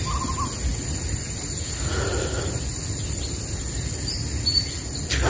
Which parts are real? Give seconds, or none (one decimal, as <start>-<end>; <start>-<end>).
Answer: 0.0-5.3